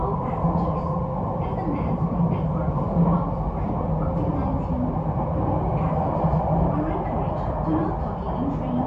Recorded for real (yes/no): yes